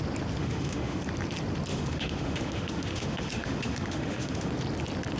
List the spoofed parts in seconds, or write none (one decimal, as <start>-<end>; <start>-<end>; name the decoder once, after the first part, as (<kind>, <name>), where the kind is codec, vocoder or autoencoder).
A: 0.4-1.0 (autoencoder, DAC-VAE); 1.7-4.5